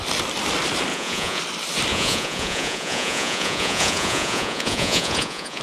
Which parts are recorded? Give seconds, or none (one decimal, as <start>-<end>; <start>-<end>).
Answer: 0.0-0.9; 1.4-1.9